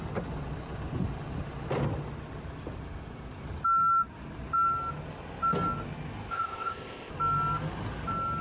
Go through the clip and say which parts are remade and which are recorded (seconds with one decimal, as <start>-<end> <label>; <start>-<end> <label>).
0.0-6.3 recorded; 6.3-7.1 remade; 7.1-8.4 recorded

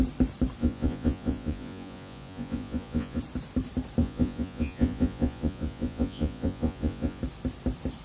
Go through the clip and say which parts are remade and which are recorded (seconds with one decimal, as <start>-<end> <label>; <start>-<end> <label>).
0.0-0.6 recorded; 0.6-3.2 remade; 3.2-4.0 recorded; 4.0-7.2 remade; 7.2-8.0 recorded